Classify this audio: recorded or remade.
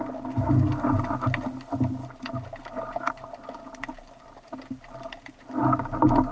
recorded